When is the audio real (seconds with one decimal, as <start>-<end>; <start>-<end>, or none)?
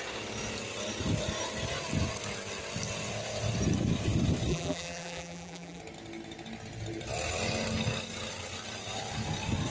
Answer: 0.0-4.5; 5.8-9.7